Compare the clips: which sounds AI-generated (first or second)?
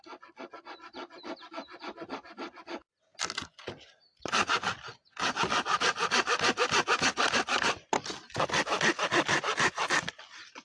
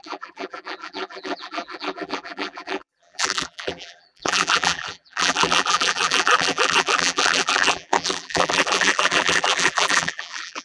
second